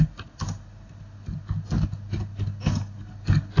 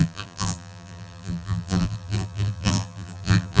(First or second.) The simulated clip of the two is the second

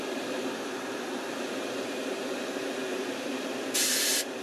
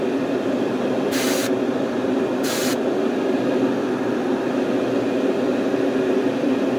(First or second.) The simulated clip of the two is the first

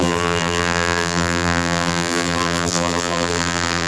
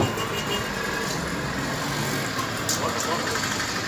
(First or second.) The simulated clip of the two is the first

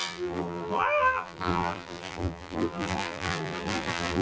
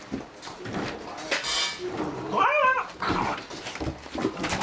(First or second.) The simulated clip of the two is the first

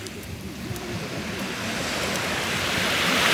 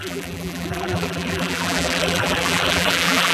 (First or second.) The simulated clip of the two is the second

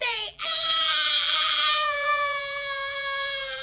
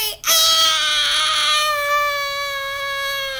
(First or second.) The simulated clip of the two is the first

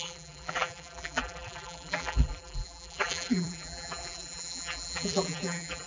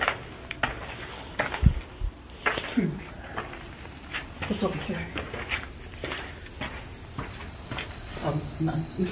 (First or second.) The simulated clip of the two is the first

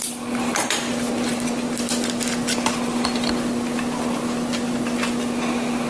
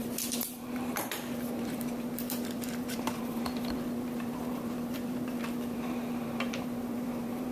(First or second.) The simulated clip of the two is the second